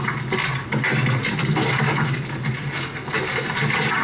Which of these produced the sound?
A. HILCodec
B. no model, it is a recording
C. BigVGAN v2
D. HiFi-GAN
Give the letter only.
B